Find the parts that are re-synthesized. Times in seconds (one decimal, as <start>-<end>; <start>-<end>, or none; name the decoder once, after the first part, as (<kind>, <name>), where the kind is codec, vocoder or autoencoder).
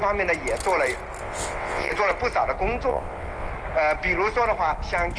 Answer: 1.2-1.9 (vocoder, WaveNeXt); 2.9-3.5